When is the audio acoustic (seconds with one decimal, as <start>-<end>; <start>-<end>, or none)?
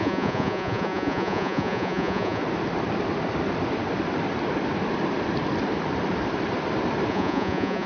2.4-7.1